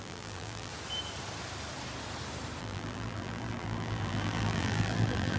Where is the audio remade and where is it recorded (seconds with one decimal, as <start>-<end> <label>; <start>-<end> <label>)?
0.0-0.7 remade; 0.7-2.6 recorded; 2.6-5.4 remade